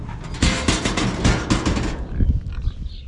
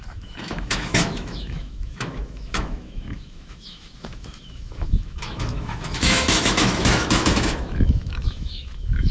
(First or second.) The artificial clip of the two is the second